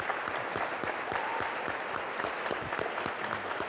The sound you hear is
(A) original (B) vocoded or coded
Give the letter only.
A